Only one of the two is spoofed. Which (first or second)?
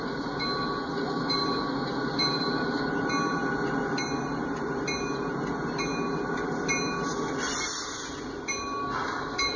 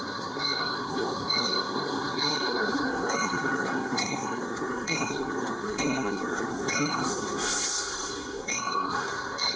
second